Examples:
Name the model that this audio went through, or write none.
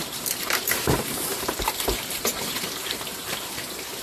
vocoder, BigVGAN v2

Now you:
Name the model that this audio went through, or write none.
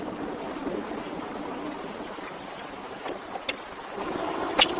none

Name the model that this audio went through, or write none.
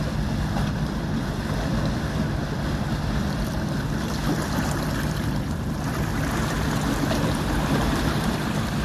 vocoder, BigVGAN v2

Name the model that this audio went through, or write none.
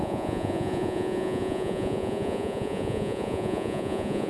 vocoder, Vocos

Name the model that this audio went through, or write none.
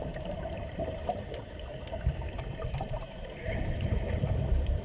vocoder, BigVGAN v2